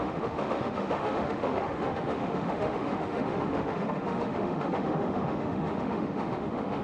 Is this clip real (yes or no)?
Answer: no